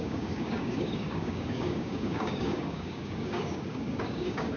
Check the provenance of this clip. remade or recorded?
remade